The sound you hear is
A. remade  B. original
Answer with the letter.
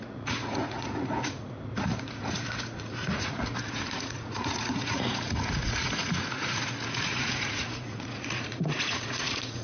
A